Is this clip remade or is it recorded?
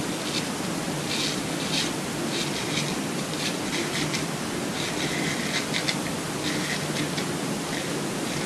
recorded